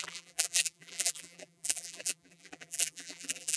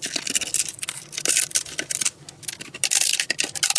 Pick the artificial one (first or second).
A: first